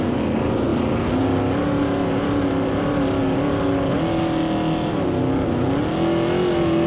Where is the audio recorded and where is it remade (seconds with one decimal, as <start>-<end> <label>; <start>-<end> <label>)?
0.0-6.9 recorded